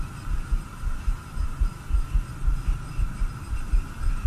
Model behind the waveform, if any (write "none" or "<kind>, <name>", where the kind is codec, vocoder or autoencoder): none